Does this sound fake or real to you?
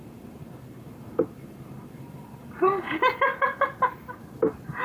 fake